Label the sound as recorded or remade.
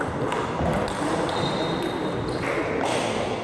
recorded